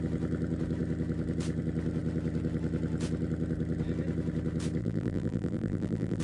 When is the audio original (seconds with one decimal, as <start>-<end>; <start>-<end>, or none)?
0.0-4.8